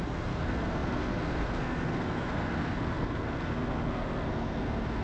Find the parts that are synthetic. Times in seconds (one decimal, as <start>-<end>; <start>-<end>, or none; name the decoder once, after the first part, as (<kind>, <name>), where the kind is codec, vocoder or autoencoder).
0.0-5.0 (codec, SNAC)